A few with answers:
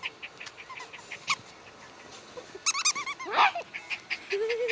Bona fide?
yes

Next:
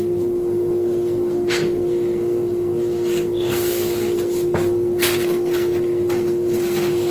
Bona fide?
no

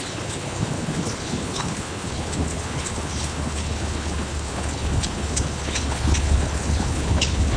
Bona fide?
no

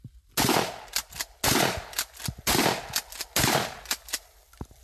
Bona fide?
yes